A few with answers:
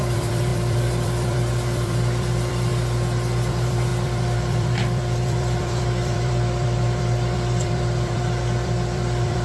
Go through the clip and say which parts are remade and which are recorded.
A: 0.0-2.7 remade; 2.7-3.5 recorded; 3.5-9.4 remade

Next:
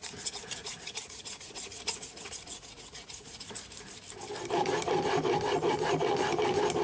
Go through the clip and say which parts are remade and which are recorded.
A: 0.0-0.6 recorded; 0.6-3.5 remade; 3.5-6.8 recorded

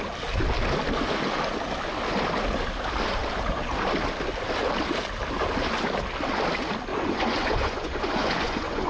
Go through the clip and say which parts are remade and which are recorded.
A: 0.0-6.9 recorded; 6.9-8.9 remade

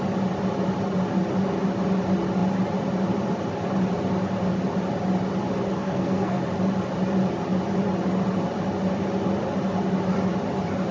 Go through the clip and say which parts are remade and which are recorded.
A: 0.0-5.8 recorded; 5.8-6.4 remade; 6.4-10.9 recorded

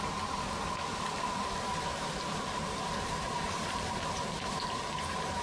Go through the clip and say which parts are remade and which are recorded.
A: 0.0-1.9 recorded; 1.9-5.4 remade

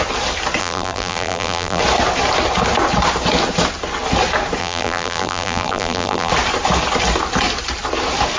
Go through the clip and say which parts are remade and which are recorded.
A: 0.0-0.6 recorded; 0.6-1.8 remade; 1.8-4.6 recorded; 4.6-6.3 remade; 6.3-8.4 recorded

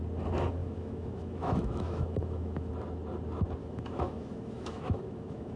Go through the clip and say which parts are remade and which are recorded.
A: 0.0-0.6 recorded; 0.6-2.7 remade; 2.7-3.6 recorded; 3.6-5.6 remade

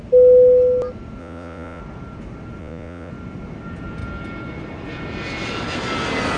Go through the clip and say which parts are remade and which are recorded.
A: 0.0-1.2 recorded; 1.2-1.8 remade; 1.8-2.6 recorded; 2.6-3.1 remade; 3.1-6.4 recorded